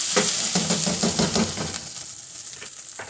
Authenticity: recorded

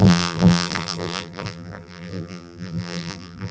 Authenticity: remade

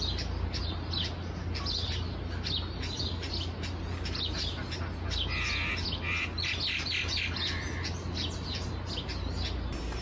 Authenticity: recorded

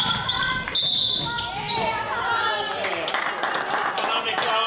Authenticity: recorded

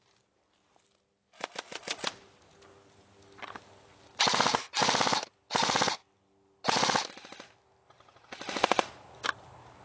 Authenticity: recorded